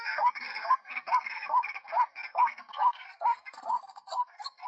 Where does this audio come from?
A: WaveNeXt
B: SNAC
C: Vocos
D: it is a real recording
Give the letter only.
B